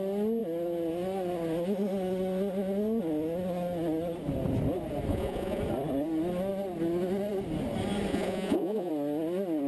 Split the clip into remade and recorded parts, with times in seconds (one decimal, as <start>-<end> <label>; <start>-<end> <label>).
0.0-5.1 recorded; 5.1-5.6 remade; 5.6-8.1 recorded; 8.1-8.9 remade; 8.9-9.7 recorded